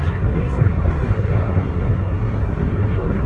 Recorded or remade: remade